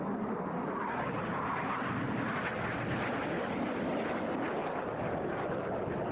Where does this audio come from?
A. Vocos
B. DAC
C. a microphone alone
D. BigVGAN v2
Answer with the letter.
C